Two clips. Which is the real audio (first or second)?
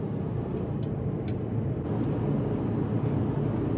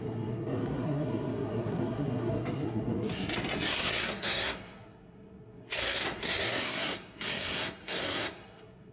first